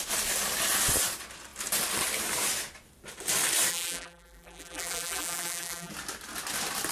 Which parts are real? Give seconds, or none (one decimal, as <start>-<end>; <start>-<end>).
0.0-3.7; 5.9-6.9